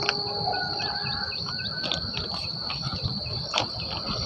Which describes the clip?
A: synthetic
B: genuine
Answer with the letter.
B